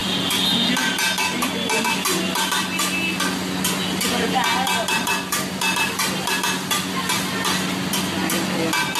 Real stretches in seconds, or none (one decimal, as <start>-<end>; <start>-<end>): 0.0-9.0